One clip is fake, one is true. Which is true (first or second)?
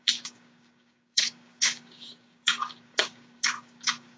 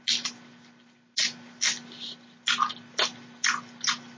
second